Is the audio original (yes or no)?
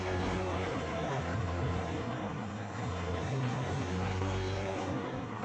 no